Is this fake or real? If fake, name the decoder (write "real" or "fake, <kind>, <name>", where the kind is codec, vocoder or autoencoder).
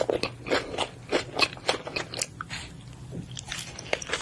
real